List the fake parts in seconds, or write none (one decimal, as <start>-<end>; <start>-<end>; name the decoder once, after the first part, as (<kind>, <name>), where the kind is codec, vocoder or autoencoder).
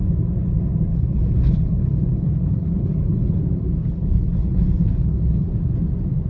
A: 0.9-3.4 (codec, HILCodec); 3.8-5.5